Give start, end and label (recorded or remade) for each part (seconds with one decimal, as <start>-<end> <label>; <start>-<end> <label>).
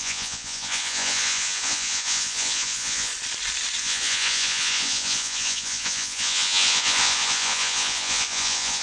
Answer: 0.0-3.1 remade; 3.1-3.8 recorded; 3.8-8.8 remade